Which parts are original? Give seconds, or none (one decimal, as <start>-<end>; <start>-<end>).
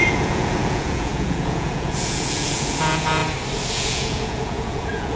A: 3.2-3.7